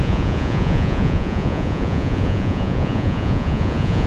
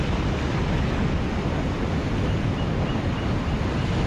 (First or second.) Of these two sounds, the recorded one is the second